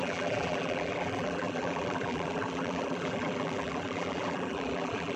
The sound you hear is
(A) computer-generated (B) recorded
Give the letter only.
A